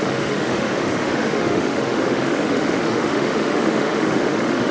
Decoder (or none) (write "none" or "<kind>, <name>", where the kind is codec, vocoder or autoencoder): autoencoder, DAC-VAE